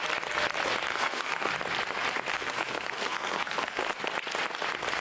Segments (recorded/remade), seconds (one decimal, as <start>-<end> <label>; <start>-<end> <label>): 0.0-0.9 recorded; 0.9-1.5 remade; 1.5-2.3 recorded; 2.3-4.0 remade; 4.0-5.0 recorded